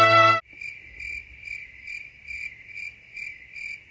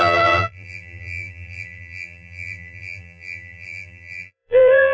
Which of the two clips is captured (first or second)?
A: first